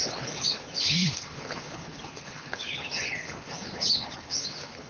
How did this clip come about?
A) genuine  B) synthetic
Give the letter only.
B